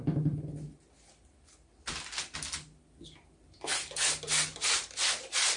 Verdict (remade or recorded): recorded